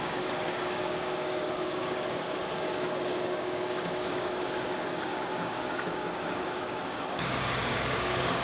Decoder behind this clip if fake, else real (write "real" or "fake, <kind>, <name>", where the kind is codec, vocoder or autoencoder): fake, codec, DAC